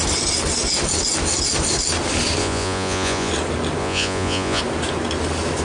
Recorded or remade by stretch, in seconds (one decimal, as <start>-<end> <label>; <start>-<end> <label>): 0.0-2.4 recorded; 2.4-3.3 remade; 3.3-3.8 recorded; 3.8-4.6 remade; 4.6-5.6 recorded